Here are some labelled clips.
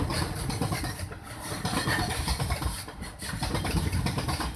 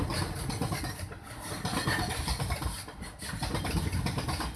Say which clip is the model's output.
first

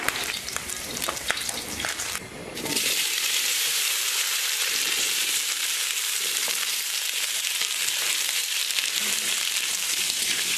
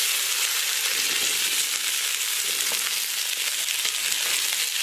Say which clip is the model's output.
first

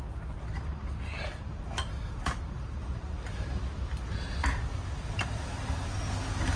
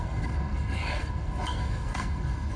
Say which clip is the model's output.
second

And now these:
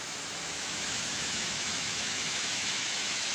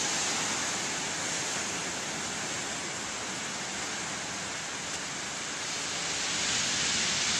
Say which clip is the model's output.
first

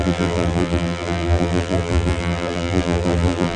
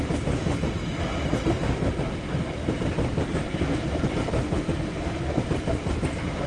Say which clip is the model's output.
first